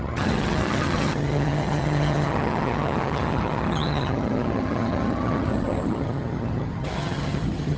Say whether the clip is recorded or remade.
remade